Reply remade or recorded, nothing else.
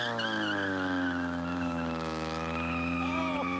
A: recorded